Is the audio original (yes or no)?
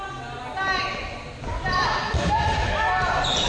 yes